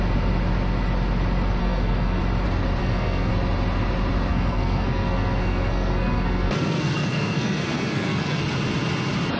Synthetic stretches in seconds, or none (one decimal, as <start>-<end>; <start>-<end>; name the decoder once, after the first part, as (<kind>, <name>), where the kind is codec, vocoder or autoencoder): 1.6-2.2 (codec, SNAC); 2.8-3.3; 4.3-8.4